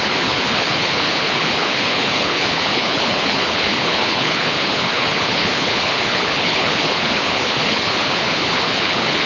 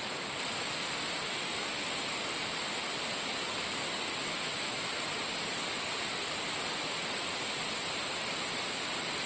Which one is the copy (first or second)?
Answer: first